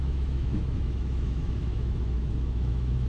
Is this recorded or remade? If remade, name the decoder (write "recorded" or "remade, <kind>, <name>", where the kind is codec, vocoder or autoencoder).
remade, autoencoder, DAC-VAE